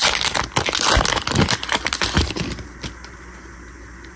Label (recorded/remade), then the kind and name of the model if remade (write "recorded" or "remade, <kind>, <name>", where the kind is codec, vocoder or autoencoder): recorded